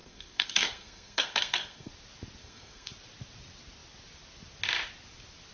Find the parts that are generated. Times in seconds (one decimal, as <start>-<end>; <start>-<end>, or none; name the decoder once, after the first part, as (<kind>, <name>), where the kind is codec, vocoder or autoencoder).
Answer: 0.0-1.9 (codec, SNAC); 2.4-2.9